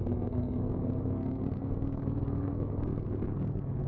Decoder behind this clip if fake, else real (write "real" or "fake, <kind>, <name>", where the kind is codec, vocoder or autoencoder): fake, codec, SNAC